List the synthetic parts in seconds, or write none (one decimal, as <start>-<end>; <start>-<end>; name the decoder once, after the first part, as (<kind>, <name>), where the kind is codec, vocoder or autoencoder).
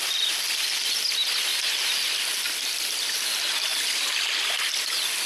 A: none